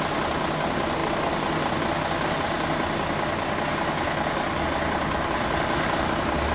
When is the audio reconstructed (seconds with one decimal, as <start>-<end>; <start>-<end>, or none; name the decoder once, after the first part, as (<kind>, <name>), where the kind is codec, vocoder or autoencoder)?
none

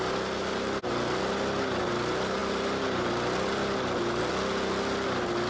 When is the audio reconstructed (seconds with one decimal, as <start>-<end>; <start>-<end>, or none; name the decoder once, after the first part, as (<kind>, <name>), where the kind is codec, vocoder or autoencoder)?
none

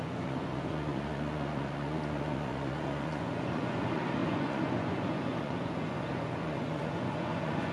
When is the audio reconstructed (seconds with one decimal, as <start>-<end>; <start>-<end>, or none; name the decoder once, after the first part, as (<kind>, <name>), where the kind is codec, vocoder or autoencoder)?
0.0-7.7 (vocoder, Vocos)